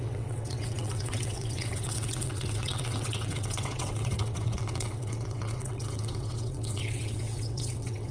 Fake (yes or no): yes